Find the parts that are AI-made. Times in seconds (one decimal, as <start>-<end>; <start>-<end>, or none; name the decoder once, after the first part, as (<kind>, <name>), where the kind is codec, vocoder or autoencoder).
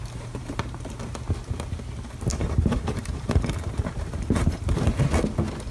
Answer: 0.0-1.0 (vocoder, BigVGAN v2); 2.3-5.1